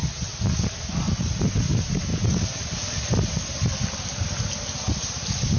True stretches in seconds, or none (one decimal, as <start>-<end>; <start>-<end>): 0.0-5.6